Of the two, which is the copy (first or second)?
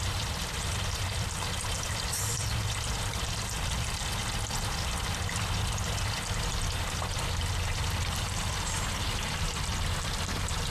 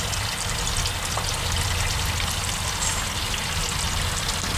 first